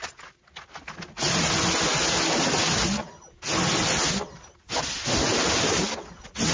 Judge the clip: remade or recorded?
recorded